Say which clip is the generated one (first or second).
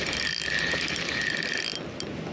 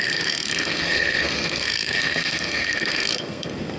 second